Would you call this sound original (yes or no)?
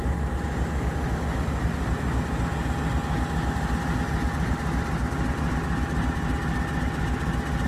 yes